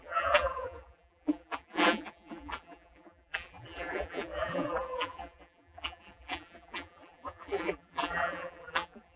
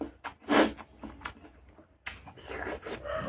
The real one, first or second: second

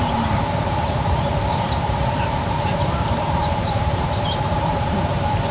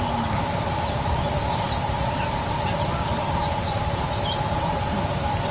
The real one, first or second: second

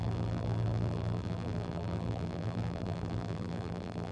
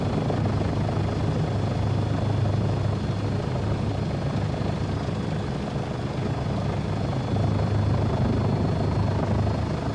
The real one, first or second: second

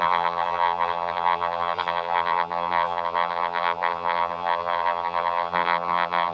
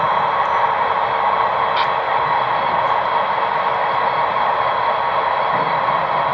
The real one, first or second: second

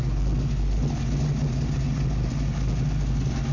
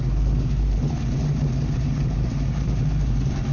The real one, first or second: first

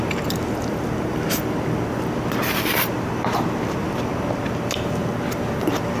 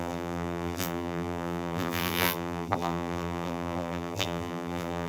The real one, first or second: first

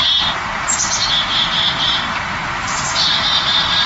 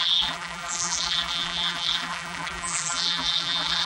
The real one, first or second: first